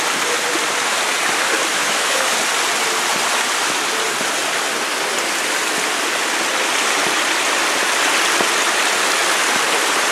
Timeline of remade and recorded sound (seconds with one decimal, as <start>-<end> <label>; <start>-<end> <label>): 0.0-1.7 recorded; 1.7-2.3 remade; 2.3-10.1 recorded